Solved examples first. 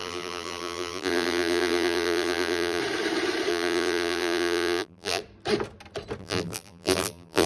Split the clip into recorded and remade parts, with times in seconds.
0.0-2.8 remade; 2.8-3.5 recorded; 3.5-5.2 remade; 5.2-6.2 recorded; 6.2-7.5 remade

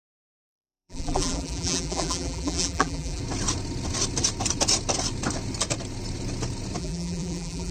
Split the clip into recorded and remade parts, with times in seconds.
0.0-3.2 remade; 3.2-6.8 recorded; 6.8-7.7 remade